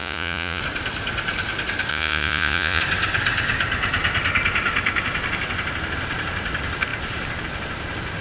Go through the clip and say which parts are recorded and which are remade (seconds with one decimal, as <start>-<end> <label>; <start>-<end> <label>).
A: 0.0-0.6 remade; 0.6-1.9 recorded; 1.9-2.8 remade; 2.8-8.2 recorded